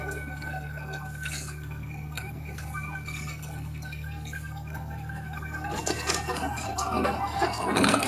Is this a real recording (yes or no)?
no